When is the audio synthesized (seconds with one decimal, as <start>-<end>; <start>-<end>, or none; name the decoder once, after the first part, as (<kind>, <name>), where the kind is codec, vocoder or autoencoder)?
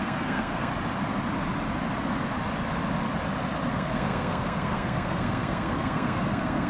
0.0-0.7 (codec, SNAC); 3.7-6.7